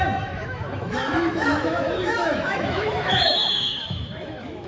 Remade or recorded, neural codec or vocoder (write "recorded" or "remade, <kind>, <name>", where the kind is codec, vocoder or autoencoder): remade, autoencoder, DAC-VAE